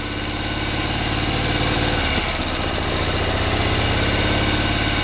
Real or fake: real